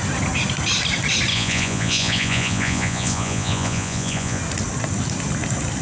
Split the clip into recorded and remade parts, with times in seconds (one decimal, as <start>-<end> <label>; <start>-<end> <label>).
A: 0.0-1.3 recorded; 1.3-4.4 remade; 4.4-5.8 recorded